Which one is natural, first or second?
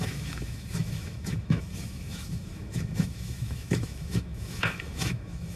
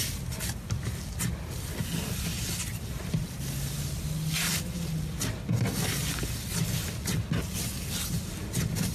second